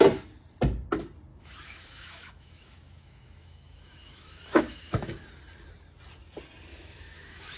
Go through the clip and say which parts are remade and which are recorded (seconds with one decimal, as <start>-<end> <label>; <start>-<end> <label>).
0.0-1.3 recorded; 1.3-5.3 remade; 5.3-6.7 recorded; 6.7-7.6 remade